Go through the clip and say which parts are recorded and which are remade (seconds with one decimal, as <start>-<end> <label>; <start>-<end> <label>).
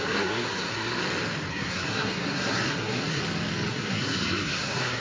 0.0-1.0 remade; 1.0-1.5 recorded; 1.5-3.2 remade; 3.2-3.7 recorded; 3.7-5.0 remade